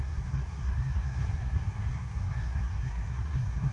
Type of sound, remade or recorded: remade